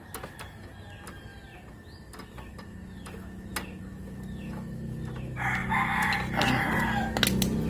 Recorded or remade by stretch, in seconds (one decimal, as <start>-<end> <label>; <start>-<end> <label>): 0.0-7.7 recorded